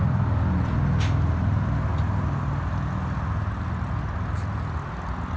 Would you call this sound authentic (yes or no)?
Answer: yes